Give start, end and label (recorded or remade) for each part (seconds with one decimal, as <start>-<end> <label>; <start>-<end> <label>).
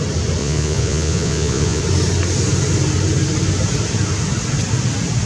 0.0-0.4 recorded; 0.4-1.8 remade; 1.8-5.3 recorded